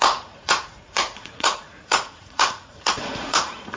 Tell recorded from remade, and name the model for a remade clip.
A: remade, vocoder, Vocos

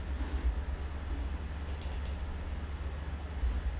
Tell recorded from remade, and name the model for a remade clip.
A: recorded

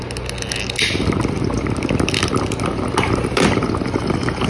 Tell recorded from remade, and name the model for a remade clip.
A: recorded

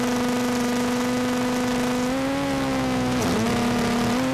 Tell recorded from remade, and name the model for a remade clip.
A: recorded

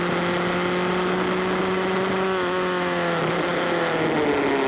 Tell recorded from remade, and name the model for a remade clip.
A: recorded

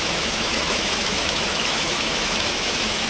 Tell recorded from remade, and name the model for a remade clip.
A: remade, autoencoder, DAC-VAE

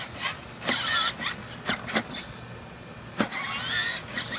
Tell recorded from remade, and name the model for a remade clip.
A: recorded